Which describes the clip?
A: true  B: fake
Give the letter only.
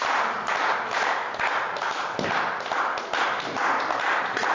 A